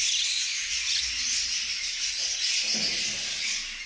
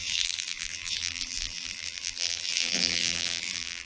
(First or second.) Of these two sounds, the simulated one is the second